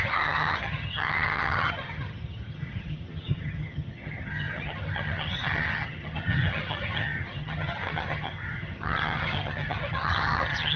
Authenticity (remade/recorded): remade